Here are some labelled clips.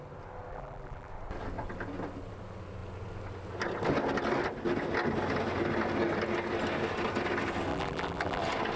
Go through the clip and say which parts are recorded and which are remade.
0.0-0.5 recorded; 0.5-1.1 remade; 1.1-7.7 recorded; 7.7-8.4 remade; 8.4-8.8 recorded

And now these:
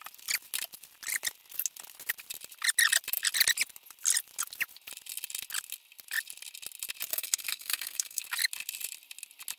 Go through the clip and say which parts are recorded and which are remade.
0.0-7.1 recorded; 7.1-8.2 remade; 8.2-9.6 recorded

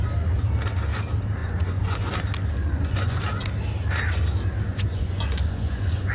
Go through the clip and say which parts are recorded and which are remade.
0.0-1.4 recorded; 1.4-2.1 remade; 2.1-2.6 recorded; 2.6-3.2 remade; 3.2-4.7 recorded; 4.7-6.1 remade

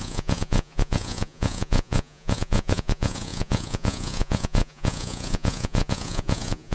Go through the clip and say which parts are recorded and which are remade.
0.0-6.7 remade

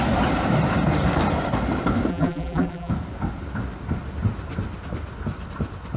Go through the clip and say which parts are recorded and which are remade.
0.0-2.1 recorded; 2.1-2.9 remade; 2.9-6.0 recorded

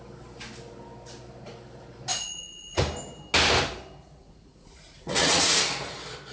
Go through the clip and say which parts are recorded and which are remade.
0.0-2.1 recorded; 2.1-2.8 remade; 2.8-4.2 recorded; 4.2-5.6 remade; 5.6-6.3 recorded

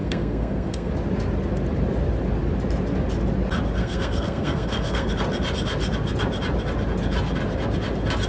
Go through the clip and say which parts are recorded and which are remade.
0.0-0.9 remade; 0.9-3.8 recorded; 3.8-5.1 remade; 5.1-8.3 recorded

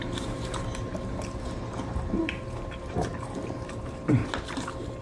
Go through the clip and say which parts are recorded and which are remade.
0.0-4.2 remade; 4.2-5.0 recorded